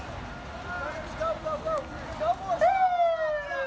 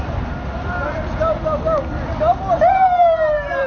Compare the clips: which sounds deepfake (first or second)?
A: second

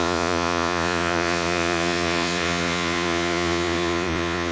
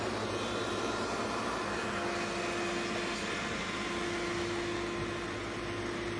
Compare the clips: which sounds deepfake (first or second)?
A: first